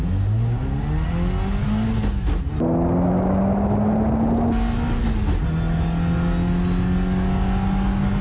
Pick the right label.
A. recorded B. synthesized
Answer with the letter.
A